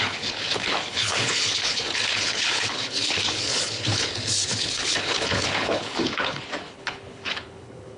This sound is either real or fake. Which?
fake